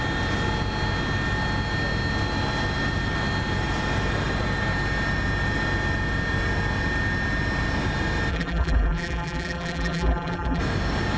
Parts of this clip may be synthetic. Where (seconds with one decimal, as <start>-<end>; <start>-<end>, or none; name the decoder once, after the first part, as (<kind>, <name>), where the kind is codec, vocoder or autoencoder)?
8.3-10.6 (vocoder, BigVGAN v2)